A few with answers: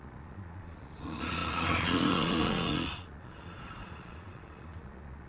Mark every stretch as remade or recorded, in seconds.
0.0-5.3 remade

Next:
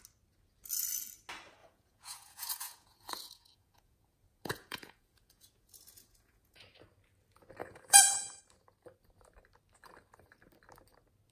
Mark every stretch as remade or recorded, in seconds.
0.0-1.6 recorded; 1.6-6.6 remade; 6.6-7.6 recorded; 7.6-8.4 remade; 8.4-11.3 recorded

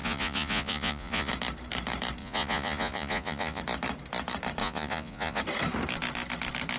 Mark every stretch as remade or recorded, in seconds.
0.0-1.3 remade; 1.3-2.2 recorded; 2.2-3.6 remade; 3.6-4.6 recorded; 4.6-5.4 remade; 5.4-6.8 recorded